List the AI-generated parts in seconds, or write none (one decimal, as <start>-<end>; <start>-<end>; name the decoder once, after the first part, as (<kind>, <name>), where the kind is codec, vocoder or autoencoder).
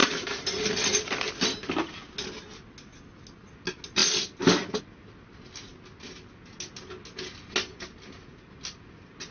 0.0-0.5 (vocoder, BigVGAN v2)